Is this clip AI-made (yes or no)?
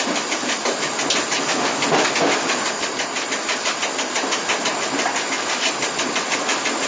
no